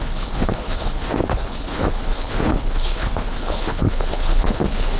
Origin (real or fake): fake